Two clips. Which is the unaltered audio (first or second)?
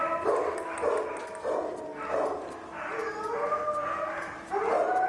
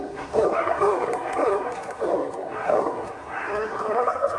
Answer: first